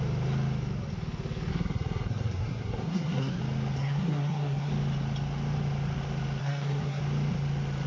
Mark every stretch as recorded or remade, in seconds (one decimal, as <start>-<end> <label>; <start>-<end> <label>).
0.0-1.5 recorded; 1.5-3.4 remade; 3.4-3.8 recorded; 3.8-4.7 remade; 4.7-6.4 recorded; 6.4-7.0 remade; 7.0-7.9 recorded

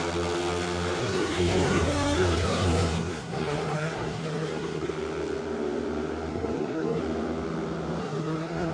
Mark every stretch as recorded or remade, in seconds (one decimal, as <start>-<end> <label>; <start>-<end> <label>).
0.0-1.0 recorded; 1.0-4.9 remade; 4.9-6.3 recorded; 6.3-7.0 remade; 7.0-8.0 recorded; 8.0-8.7 remade

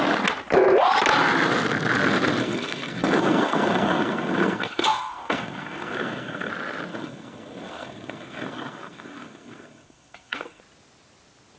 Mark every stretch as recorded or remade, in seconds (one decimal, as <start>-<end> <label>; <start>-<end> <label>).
0.0-2.4 recorded; 2.4-6.5 remade; 6.5-6.9 recorded; 6.9-10.6 remade; 10.6-11.6 recorded

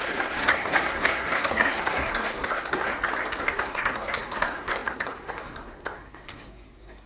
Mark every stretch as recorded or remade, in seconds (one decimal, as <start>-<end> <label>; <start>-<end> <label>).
0.0-2.9 remade; 2.9-3.4 recorded; 3.4-7.1 remade

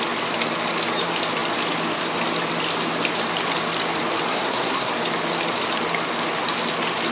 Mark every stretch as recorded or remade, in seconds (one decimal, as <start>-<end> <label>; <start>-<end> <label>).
0.0-4.3 recorded; 4.3-4.9 remade; 4.9-7.1 recorded

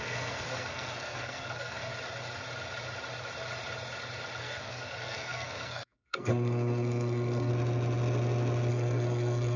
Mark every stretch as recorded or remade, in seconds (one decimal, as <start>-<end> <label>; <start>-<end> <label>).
0.0-1.9 remade; 1.9-4.4 recorded; 4.4-7.5 remade; 7.5-8.7 recorded; 8.7-9.6 remade

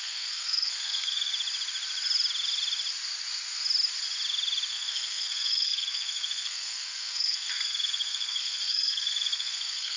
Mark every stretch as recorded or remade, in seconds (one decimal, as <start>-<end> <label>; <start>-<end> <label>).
0.0-1.3 remade; 1.3-4.7 recorded; 4.7-10.0 remade